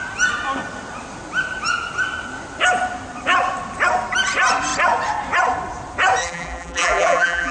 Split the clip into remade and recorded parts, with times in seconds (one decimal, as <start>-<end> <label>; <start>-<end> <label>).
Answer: 0.0-6.2 recorded; 6.2-7.5 remade

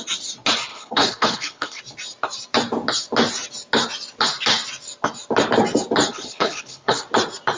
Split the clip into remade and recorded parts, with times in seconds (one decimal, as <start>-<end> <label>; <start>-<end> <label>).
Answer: 0.0-0.7 recorded; 0.7-1.8 remade; 1.8-6.1 recorded; 6.1-7.0 remade; 7.0-7.6 recorded